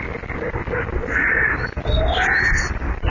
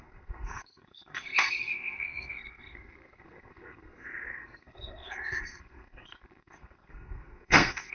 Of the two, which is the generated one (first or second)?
second